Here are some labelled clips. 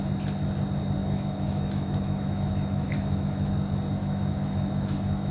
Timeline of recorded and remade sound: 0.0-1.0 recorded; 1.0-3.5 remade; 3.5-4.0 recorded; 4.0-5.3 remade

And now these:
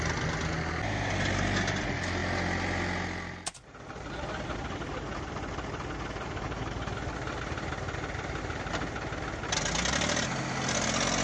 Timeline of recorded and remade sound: 0.0-11.2 recorded

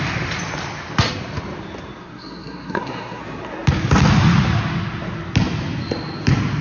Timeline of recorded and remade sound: 0.0-2.0 recorded; 2.0-3.2 remade; 3.2-6.6 recorded

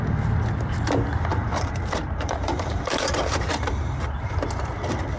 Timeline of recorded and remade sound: 0.0-1.3 recorded; 1.3-4.4 remade; 4.4-5.2 recorded